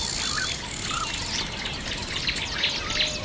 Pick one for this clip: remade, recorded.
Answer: recorded